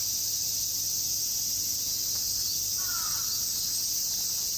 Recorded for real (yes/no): yes